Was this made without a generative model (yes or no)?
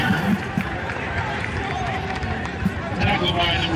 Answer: no